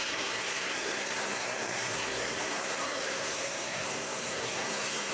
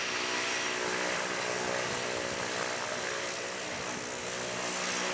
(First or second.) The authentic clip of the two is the second